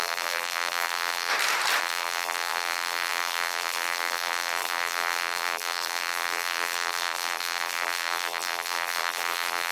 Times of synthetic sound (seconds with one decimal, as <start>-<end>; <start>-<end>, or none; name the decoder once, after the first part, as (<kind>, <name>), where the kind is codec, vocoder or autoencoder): 0.0-1.3 (vocoder, BigVGAN v2); 1.8-9.7